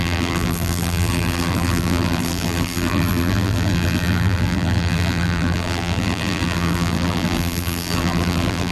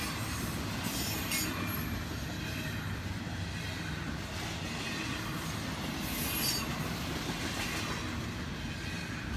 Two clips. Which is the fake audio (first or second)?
first